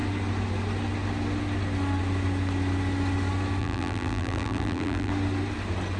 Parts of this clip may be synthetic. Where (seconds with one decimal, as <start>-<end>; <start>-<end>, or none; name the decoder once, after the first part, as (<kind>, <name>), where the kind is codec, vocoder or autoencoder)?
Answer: 3.6-5.1 (vocoder, BigVGAN v2)